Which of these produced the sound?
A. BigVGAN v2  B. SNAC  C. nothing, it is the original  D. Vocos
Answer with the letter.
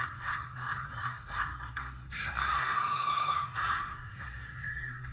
B